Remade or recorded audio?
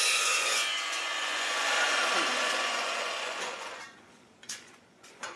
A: remade